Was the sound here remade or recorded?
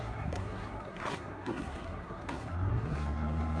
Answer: remade